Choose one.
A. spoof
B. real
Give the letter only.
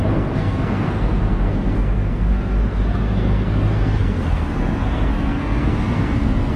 A